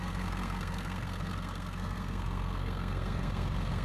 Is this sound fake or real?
fake